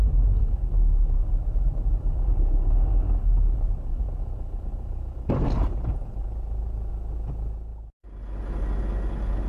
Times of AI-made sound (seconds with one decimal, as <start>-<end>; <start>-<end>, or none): 3.9-6.9